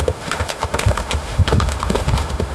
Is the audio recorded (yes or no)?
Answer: no